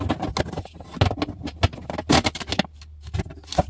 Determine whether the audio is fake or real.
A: real